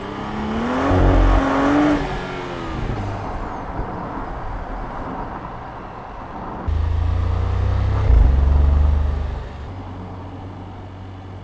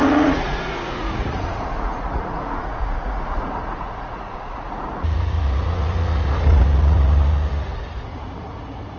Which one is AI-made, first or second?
second